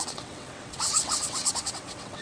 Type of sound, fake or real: fake